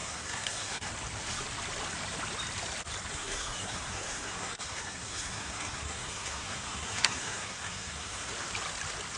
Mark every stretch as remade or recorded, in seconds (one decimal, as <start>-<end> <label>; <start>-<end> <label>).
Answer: 0.0-0.9 remade; 0.9-3.1 recorded; 3.1-8.3 remade; 8.3-9.2 recorded